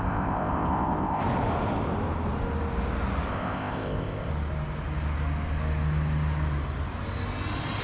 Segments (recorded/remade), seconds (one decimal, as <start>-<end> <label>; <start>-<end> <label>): 0.0-1.2 remade; 1.2-3.3 recorded; 3.3-4.3 remade; 4.3-7.8 recorded